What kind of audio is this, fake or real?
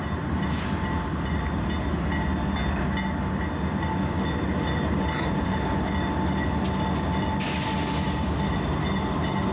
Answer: real